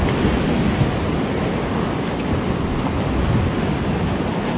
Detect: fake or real real